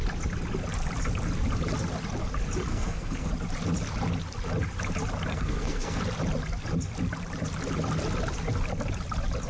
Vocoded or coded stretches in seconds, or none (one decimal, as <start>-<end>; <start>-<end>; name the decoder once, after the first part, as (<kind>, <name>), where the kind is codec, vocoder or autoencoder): 2.7-3.3 (codec, SNAC); 5.3-6.0